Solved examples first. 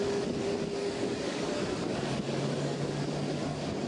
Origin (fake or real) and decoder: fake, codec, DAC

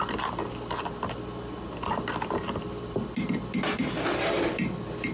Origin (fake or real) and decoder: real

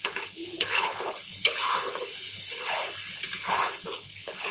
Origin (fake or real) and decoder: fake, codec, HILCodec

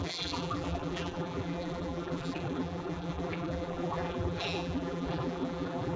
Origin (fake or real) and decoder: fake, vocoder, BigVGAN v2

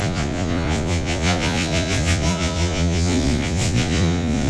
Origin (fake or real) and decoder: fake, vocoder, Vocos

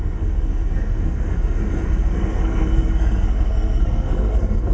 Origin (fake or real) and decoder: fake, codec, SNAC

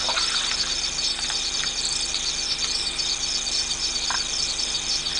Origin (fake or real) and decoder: real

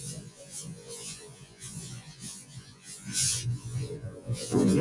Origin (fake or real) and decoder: fake, vocoder, Vocos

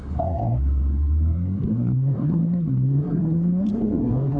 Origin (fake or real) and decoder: fake, codec, SNAC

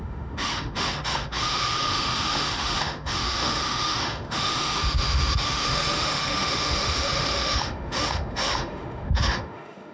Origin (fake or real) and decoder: fake, autoencoder, DAC-VAE